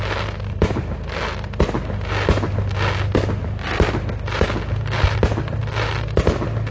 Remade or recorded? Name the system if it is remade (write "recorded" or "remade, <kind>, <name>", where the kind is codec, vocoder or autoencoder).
recorded